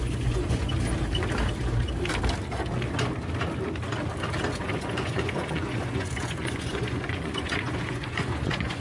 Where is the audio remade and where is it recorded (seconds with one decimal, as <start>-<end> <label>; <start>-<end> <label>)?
0.0-0.7 remade; 0.7-4.5 recorded; 4.5-8.8 remade